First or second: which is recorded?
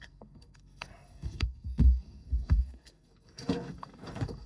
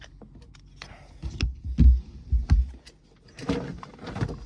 second